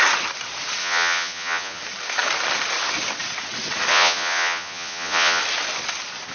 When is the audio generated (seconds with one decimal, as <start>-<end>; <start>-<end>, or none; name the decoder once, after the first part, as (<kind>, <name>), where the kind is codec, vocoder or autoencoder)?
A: 0.8-1.8 (vocoder, Vocos); 3.9-5.4